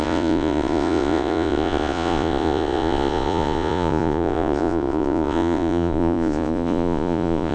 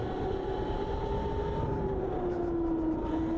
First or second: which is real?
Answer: second